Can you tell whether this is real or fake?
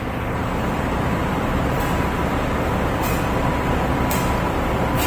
real